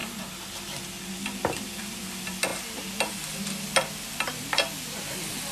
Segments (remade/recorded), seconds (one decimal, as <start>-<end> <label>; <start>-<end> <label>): 0.0-5.5 recorded